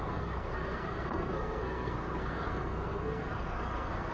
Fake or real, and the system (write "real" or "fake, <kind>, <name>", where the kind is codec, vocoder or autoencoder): fake, codec, SNAC